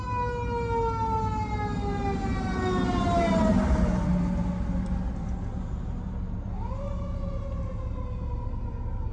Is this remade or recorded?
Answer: recorded